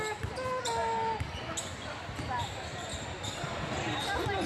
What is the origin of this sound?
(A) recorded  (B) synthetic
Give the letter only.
A